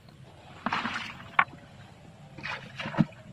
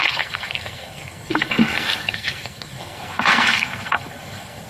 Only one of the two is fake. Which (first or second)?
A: second